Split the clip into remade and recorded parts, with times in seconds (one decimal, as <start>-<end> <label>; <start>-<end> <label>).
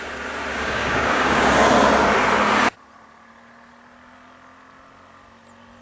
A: 0.0-0.5 recorded; 0.5-1.5 remade; 1.5-5.8 recorded